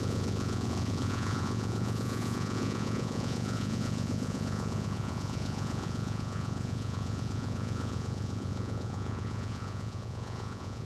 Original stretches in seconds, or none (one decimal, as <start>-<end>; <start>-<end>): none

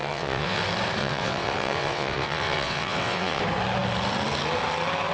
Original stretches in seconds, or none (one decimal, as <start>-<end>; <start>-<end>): 0.6-1.0; 3.4-5.1

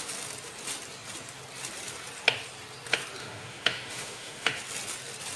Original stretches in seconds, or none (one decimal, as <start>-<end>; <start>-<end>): 0.0-3.2; 4.6-5.4

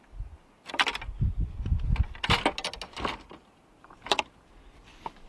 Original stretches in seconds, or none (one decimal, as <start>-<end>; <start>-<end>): 0.9-4.1

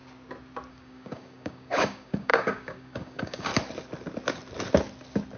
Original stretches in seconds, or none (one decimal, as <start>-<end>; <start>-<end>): 0.0-0.7; 3.5-5.4

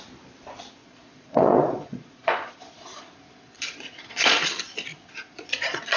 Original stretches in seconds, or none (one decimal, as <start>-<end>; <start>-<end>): 0.0-0.8; 4.4-4.9